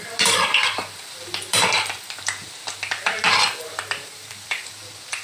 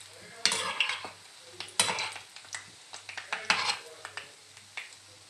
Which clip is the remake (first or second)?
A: first